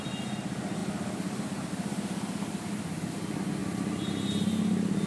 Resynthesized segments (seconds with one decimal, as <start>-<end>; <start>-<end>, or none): none